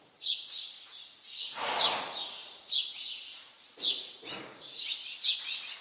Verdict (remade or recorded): remade